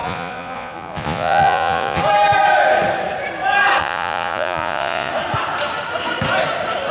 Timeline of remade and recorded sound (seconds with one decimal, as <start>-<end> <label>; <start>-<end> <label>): 0.0-2.0 remade; 2.0-3.8 recorded; 3.8-5.1 remade; 5.1-6.9 recorded